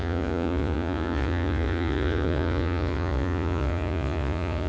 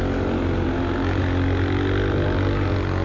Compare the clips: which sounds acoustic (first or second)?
second